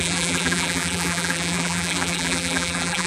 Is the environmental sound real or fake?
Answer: fake